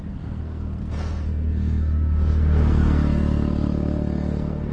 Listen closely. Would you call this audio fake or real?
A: fake